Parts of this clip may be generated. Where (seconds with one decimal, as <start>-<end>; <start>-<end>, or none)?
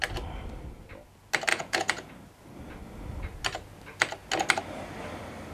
1.5-2.1